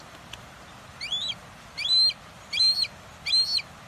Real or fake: real